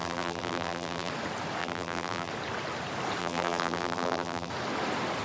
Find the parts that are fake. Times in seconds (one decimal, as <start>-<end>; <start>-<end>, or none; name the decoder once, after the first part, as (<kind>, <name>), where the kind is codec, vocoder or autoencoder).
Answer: 0.0-1.1 (vocoder, BigVGAN v2); 1.6-2.3; 3.2-4.5